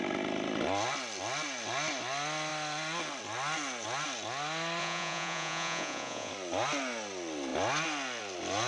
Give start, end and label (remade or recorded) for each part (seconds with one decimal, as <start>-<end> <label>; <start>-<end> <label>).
0.0-4.8 recorded; 4.8-6.3 remade; 6.3-8.7 recorded